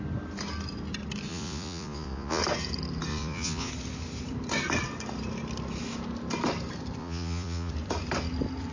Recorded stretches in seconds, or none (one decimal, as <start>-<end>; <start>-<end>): 0.0-1.3; 2.4-3.1; 3.7-7.0; 7.7-8.7